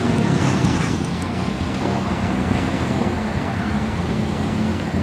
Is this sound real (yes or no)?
no